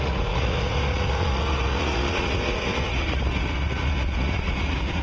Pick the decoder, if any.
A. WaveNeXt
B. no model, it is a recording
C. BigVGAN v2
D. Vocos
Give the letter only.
D